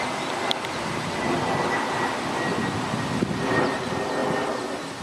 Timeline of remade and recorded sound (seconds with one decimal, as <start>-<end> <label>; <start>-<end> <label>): 0.0-5.0 recorded